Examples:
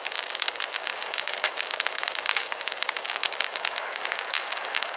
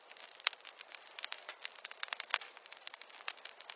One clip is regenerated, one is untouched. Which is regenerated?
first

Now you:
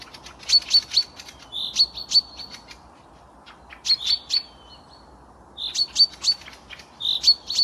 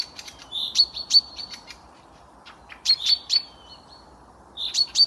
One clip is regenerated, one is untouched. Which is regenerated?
second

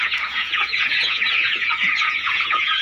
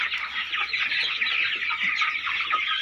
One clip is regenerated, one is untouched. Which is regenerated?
first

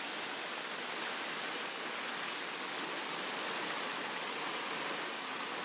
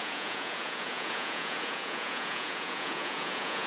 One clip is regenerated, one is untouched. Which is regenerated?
second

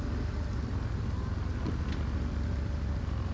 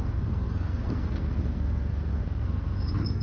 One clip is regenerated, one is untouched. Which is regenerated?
second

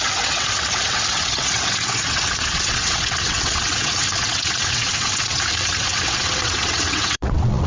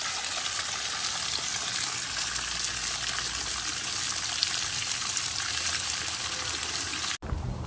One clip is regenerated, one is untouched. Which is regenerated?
first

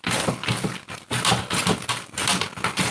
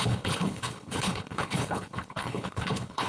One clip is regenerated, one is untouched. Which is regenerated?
second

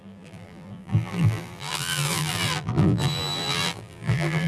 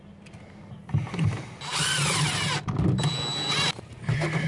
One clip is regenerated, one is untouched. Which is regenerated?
first